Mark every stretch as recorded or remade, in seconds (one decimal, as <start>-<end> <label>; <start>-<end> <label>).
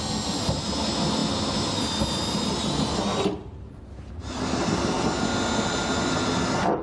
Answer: 0.0-6.8 recorded